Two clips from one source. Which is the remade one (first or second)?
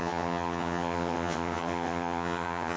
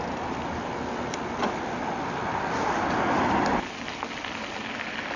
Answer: first